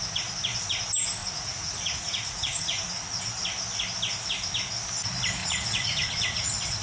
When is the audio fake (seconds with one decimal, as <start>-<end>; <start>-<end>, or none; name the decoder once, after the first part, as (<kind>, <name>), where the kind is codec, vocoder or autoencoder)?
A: 1.2-3.2 (vocoder, Vocos); 5.4-6.8